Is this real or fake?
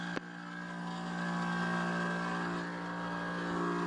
real